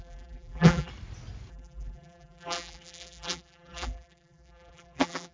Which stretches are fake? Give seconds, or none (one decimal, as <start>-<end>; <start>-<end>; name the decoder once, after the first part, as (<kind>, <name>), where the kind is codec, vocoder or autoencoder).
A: 0.0-0.9 (vocoder, BigVGAN v2); 1.5-5.3